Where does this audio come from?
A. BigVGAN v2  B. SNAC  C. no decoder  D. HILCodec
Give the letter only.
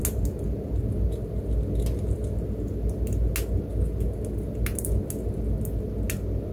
C